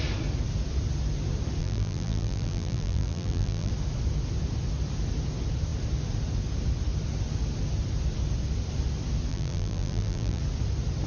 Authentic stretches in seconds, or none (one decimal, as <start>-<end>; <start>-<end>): 0.0-1.6; 3.7-9.3; 10.4-11.1